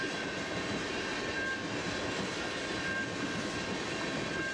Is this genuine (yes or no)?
yes